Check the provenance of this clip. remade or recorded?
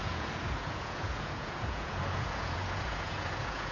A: remade